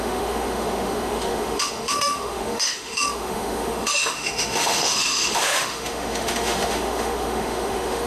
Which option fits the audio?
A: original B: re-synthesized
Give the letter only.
B